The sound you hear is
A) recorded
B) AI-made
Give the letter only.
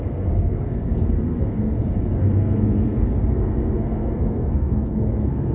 B